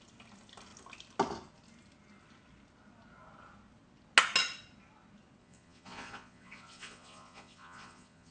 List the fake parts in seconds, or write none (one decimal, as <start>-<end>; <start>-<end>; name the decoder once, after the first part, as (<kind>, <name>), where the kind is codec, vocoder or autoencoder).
5.4-8.3 (vocoder, Vocos)